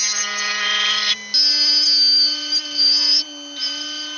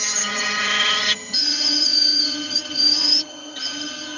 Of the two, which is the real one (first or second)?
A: first